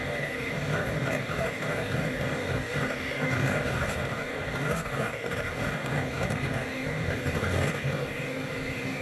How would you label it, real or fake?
fake